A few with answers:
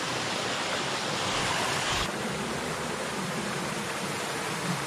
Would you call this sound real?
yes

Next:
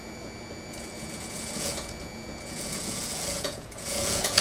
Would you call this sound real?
no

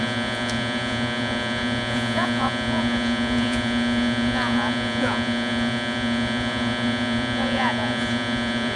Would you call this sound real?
no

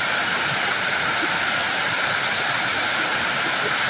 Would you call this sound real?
yes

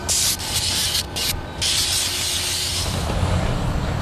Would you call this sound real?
yes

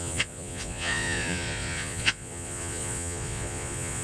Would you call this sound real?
no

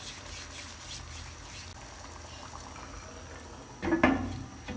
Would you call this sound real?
yes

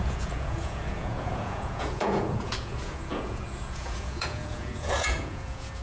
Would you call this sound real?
no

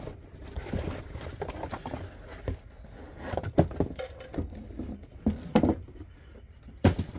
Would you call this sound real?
yes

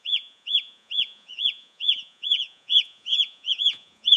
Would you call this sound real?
no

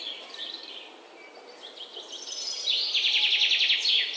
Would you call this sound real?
yes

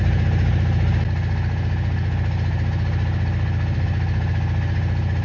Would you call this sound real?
yes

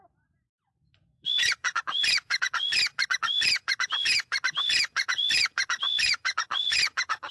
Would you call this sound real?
no